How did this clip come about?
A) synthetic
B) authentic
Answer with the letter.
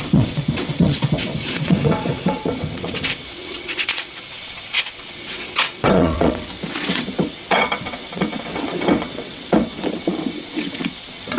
A